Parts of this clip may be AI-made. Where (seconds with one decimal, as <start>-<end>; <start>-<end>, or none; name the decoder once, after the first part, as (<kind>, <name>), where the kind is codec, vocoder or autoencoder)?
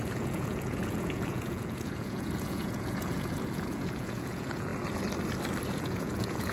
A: 0.0-4.7 (vocoder, Vocos); 5.7-6.5